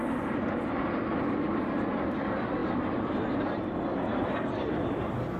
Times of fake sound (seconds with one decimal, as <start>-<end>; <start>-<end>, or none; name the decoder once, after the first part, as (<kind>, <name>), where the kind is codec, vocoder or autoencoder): none